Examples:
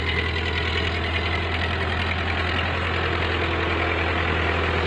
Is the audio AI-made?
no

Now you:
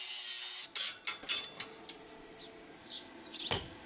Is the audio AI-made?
no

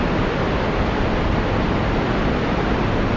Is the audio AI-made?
no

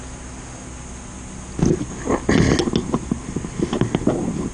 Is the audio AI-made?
no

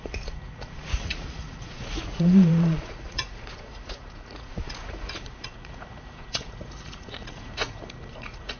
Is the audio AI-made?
yes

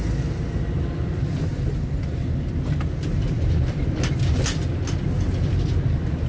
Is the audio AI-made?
no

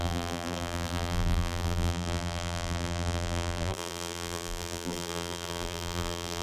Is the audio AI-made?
yes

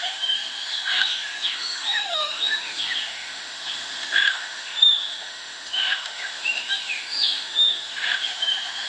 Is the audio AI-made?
yes